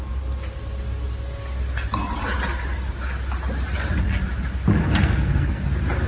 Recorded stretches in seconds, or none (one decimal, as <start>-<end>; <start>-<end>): 0.0-4.8; 5.6-6.1